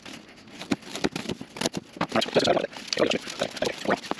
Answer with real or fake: real